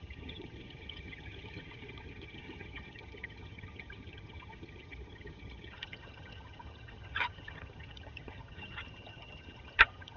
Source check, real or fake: fake